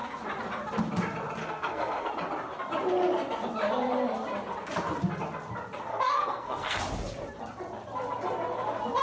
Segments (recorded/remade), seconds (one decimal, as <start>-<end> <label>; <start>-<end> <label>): 0.0-1.4 recorded; 1.4-2.1 remade; 2.1-5.9 recorded; 5.9-6.8 remade; 6.8-9.0 recorded